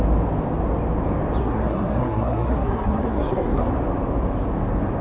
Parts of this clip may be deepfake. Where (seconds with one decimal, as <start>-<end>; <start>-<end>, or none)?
1.4-3.7